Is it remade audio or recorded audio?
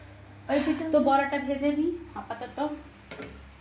recorded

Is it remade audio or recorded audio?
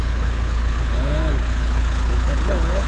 remade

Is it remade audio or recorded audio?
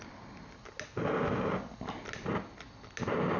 recorded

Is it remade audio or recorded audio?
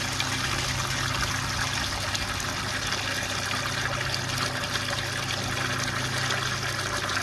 recorded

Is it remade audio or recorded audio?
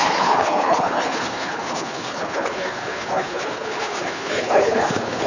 remade